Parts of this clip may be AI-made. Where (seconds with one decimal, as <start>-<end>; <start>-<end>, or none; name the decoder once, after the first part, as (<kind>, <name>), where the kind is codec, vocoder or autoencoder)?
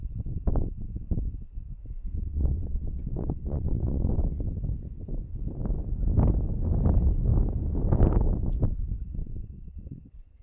2.0-4.1 (vocoder, WaveNeXt); 9.2-10.4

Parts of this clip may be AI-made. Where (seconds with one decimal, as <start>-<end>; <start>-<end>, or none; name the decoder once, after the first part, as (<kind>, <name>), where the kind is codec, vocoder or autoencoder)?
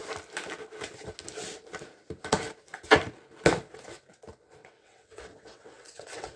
4.6-6.4 (vocoder, WaveNeXt)